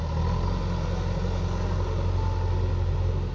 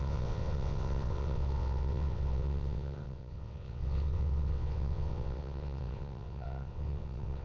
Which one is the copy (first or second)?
second